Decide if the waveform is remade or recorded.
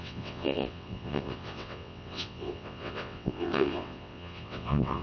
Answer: remade